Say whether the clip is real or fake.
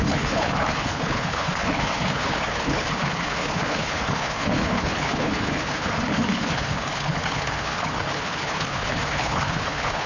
fake